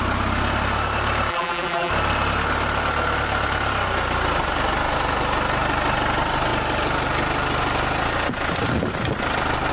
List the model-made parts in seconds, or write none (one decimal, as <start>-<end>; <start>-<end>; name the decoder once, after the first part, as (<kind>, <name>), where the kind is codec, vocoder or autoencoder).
1.3-1.9 (vocoder, BigVGAN v2)